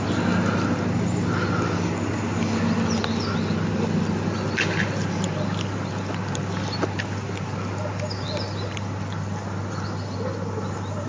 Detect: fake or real real